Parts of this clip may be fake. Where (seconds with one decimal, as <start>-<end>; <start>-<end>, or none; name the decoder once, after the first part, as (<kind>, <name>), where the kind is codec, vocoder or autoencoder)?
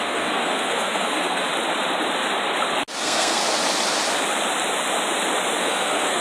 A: 0.0-1.5 (codec, SNAC); 3.0-3.4; 5.6-6.2